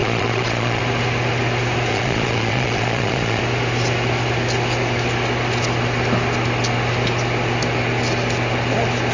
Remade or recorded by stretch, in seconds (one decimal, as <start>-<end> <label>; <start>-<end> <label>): 0.0-0.8 remade; 0.8-1.9 recorded; 1.9-3.4 remade; 3.4-9.1 recorded